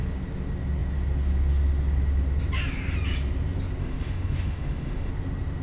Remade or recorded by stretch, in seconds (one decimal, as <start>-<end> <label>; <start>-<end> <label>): 0.0-3.8 recorded; 3.8-5.1 remade; 5.1-5.6 recorded